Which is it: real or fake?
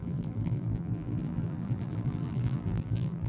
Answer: fake